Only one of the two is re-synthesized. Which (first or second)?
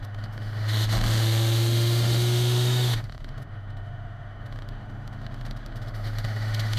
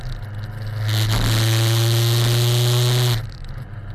first